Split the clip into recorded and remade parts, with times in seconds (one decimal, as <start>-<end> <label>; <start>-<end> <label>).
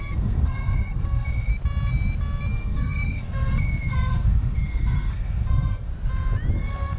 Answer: 0.0-1.5 remade; 1.5-2.5 recorded; 2.5-5.9 remade; 5.9-6.5 recorded; 6.5-7.0 remade